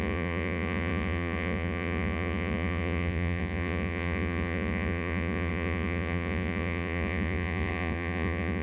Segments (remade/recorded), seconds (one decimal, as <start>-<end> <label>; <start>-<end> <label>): 0.0-8.6 remade